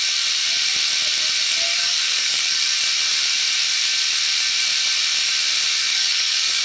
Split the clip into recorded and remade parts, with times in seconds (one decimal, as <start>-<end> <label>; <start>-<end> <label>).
0.0-1.8 recorded; 1.8-2.7 remade; 2.7-5.8 recorded; 5.8-6.6 remade